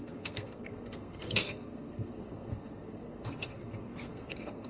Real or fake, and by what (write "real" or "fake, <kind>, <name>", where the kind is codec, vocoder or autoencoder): fake, codec, SNAC